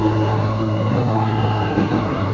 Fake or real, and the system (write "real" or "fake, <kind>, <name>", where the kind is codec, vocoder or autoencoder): fake, codec, SNAC